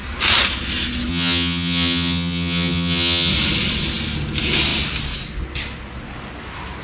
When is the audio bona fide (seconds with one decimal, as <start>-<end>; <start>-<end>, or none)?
0.0-1.1; 3.3-6.8